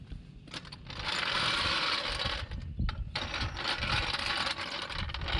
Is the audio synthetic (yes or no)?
no